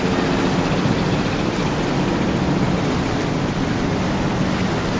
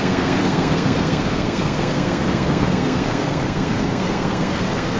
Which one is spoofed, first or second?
second